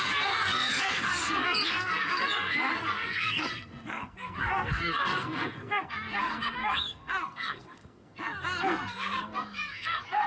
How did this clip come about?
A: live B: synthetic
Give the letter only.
B